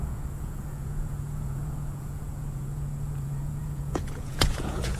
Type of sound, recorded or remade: remade